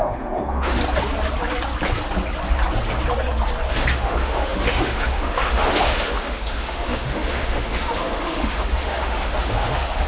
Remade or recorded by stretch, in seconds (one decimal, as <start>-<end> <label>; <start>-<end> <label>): 0.0-0.8 remade; 0.8-3.7 recorded; 3.7-10.1 remade

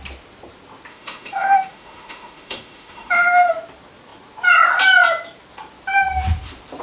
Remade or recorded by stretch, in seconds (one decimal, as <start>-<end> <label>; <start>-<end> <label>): 0.0-0.9 recorded; 0.9-3.5 remade; 3.5-6.8 recorded

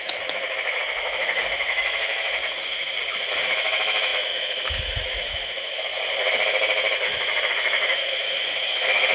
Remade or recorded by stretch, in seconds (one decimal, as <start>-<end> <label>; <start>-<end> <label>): 0.0-2.4 remade; 2.4-3.3 recorded; 3.3-5.9 remade; 5.9-7.5 recorded; 7.5-9.1 remade

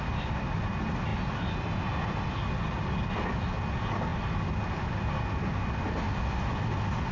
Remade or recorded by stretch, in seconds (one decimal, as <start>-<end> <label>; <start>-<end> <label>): 0.0-7.1 recorded

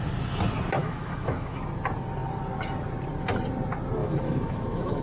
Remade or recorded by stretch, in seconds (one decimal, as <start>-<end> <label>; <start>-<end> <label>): 0.0-0.8 recorded; 0.8-1.6 remade; 1.6-4.0 recorded; 4.0-5.0 remade

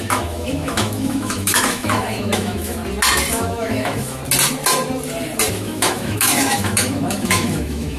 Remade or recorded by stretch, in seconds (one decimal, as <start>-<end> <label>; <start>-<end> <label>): 0.0-2.8 remade; 2.8-3.3 recorded; 3.3-4.2 remade; 4.2-5.5 recorded; 5.5-8.0 remade

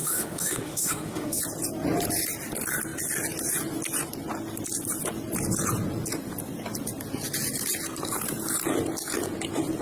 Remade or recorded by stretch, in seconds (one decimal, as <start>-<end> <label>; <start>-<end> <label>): 0.0-1.4 remade; 1.4-9.8 recorded

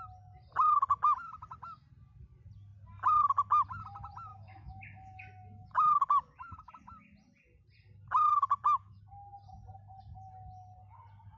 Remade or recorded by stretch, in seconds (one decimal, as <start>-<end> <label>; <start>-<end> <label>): 0.0-4.3 recorded; 4.3-6.7 remade; 6.7-8.3 recorded; 8.3-9.0 remade; 9.0-11.4 recorded